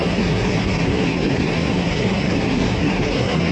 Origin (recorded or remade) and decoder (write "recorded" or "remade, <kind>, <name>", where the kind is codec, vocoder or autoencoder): remade, codec, SNAC